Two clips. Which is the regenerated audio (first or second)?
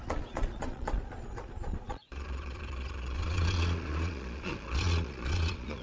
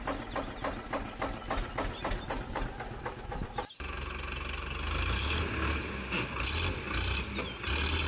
first